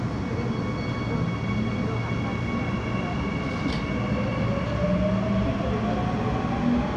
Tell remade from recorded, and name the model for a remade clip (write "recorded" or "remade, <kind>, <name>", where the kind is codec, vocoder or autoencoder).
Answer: recorded